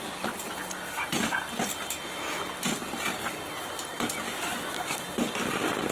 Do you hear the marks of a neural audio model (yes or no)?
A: no